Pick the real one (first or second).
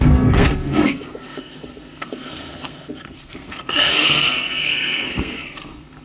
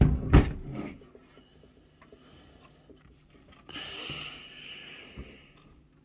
second